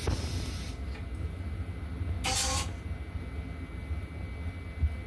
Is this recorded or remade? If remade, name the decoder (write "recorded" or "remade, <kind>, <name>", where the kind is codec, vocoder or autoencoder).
recorded